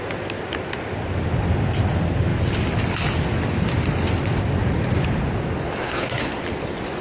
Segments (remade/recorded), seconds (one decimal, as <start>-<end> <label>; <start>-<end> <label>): 0.0-5.8 recorded; 5.8-6.4 remade; 6.4-7.0 recorded